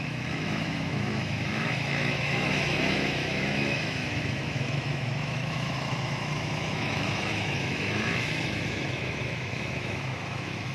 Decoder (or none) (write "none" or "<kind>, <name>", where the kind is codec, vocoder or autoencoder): autoencoder, DAC-VAE